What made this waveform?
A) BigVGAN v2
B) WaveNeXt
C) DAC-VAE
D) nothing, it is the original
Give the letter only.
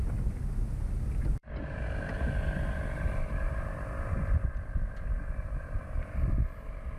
D